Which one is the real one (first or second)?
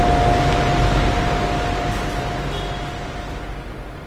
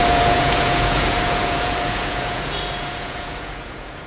first